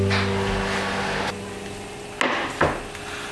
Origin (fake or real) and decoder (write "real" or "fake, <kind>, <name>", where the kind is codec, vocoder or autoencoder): real